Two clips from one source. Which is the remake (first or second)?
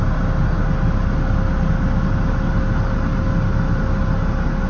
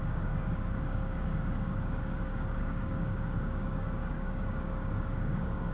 second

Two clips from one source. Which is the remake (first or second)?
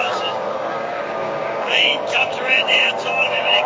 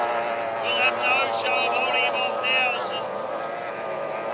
first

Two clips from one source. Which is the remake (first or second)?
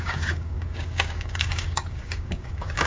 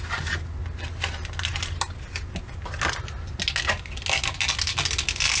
first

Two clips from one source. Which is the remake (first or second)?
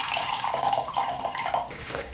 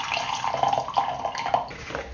first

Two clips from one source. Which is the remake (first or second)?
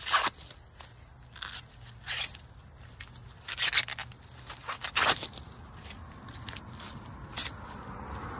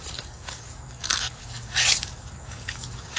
second